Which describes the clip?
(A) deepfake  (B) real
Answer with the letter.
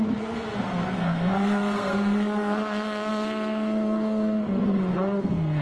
A